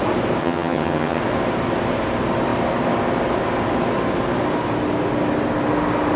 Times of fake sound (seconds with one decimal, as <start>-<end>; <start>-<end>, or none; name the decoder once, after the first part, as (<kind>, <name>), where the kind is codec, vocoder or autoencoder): 0.4-1.2 (vocoder, HiFi-GAN)